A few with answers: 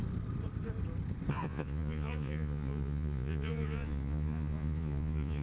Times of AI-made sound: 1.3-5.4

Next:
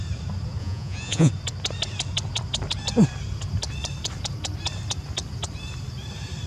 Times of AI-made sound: 0.6-1.3

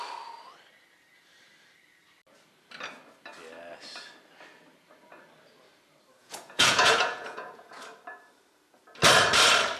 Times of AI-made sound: 6.2-7.7

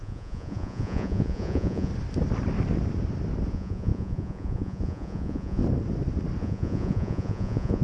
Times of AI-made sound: 0.0-1.9; 3.5-5.6; 6.4-7.8

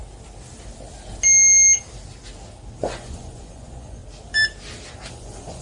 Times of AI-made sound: 2.8-4.0; 5.1-5.6

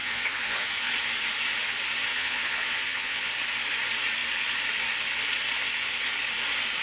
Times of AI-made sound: 0.0-0.9; 2.1-3.3